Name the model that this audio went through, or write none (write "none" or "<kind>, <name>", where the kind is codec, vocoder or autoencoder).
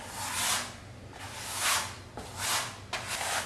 none